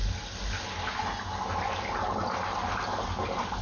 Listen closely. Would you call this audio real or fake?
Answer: real